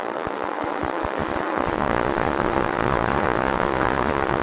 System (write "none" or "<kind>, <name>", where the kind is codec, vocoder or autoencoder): vocoder, Vocos